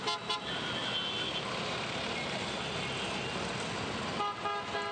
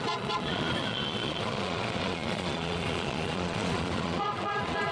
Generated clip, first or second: second